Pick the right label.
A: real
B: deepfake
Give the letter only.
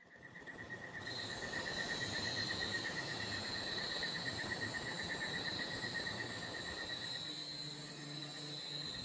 A